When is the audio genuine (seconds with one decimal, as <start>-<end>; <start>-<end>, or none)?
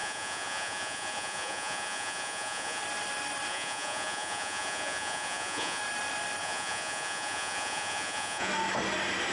2.8-3.5; 5.8-6.4; 8.5-9.3